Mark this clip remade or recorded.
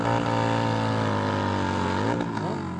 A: recorded